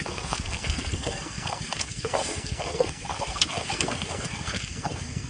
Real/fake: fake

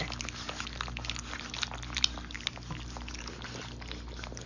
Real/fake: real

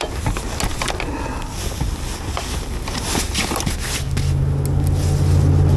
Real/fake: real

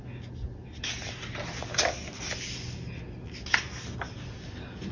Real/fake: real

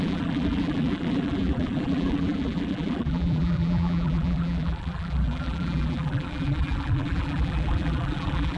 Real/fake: fake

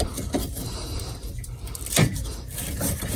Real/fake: real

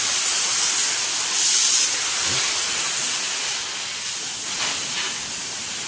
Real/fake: real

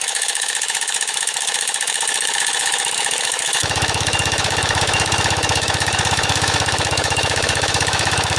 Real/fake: fake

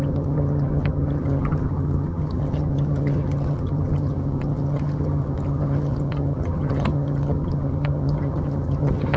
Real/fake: fake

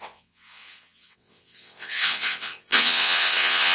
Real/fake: fake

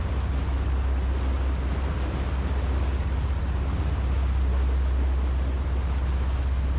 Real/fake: real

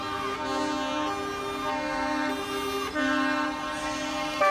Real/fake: real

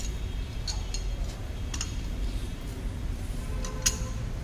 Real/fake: real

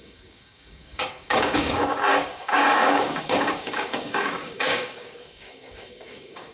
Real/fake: fake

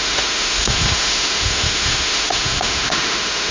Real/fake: fake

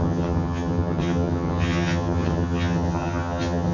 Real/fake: fake